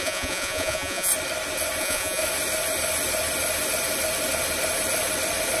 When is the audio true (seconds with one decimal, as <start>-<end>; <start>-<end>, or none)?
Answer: 1.1-1.8; 2.2-5.6